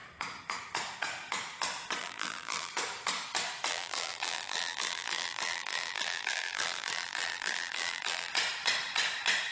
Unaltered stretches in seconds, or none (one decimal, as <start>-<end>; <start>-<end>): 0.0-2.0; 2.7-3.7; 8.3-9.5